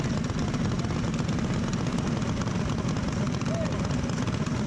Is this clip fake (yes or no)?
no